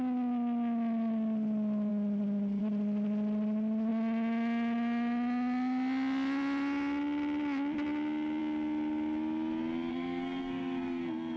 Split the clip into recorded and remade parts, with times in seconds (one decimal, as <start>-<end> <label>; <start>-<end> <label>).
0.0-9.9 recorded; 9.9-11.4 remade

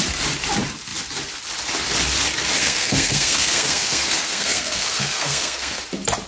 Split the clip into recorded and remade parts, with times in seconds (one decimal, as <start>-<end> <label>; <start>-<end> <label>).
0.0-2.6 recorded; 2.6-5.8 remade; 5.8-6.3 recorded